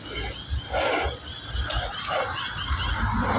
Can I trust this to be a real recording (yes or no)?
yes